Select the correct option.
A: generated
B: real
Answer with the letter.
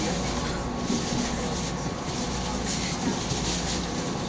B